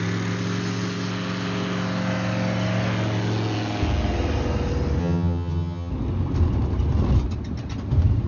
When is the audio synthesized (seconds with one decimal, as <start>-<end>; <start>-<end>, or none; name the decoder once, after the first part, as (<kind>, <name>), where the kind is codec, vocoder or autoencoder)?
5.0-5.9 (vocoder, HiFi-GAN)